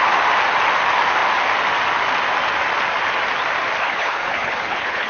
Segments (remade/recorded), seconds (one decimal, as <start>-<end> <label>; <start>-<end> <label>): 0.0-3.8 recorded; 3.8-5.1 remade